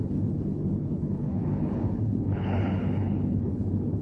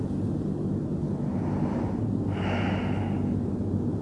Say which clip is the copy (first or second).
first